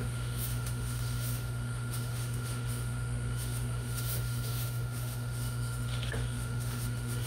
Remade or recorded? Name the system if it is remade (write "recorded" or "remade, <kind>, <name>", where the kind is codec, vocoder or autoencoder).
remade, autoencoder, DAC-VAE